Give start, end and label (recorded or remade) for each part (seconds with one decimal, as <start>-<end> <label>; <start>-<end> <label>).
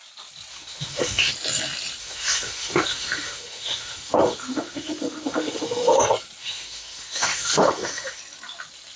0.0-0.5 recorded; 0.5-1.3 remade; 1.3-2.0 recorded; 2.0-6.0 remade; 6.0-6.4 recorded; 6.4-8.2 remade; 8.2-9.0 recorded